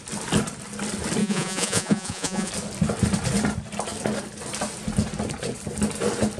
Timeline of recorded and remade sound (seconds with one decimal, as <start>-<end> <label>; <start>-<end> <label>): 0.0-1.2 recorded; 1.2-2.5 remade; 2.5-6.4 recorded